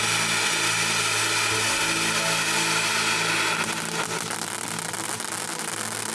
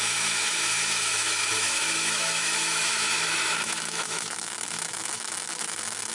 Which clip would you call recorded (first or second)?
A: first